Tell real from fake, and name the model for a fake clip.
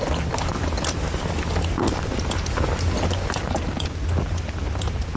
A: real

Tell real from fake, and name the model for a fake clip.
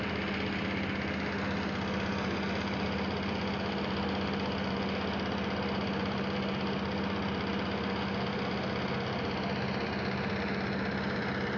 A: real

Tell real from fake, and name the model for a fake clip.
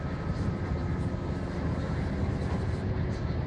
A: real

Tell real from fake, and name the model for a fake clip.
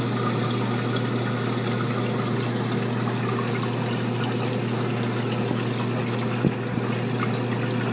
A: real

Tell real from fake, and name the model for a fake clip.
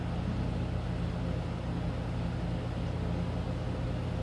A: real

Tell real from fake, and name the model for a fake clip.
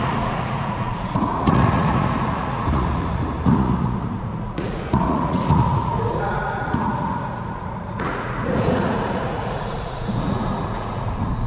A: fake, vocoder, Vocos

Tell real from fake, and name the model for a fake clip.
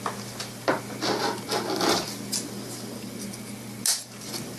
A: real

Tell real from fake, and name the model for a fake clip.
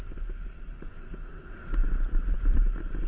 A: real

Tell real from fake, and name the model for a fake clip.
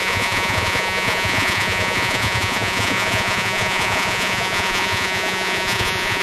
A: fake, vocoder, Vocos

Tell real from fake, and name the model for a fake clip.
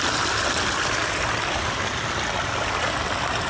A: real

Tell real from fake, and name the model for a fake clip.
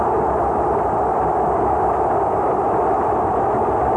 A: real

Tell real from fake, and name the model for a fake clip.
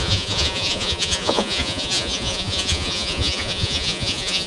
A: fake, vocoder, Vocos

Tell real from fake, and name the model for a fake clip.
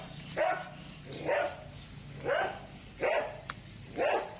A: real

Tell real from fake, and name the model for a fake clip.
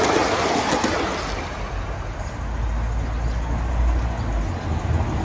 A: real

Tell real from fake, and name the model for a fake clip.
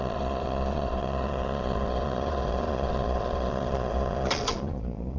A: fake, vocoder, Vocos